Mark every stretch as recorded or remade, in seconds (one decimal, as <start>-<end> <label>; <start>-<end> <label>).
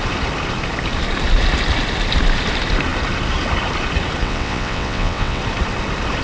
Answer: 0.0-4.2 recorded; 4.2-5.4 remade; 5.4-6.2 recorded